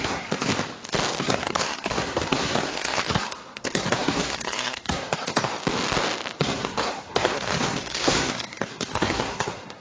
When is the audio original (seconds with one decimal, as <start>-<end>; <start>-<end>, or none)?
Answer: 0.5-1.2; 5.5-6.4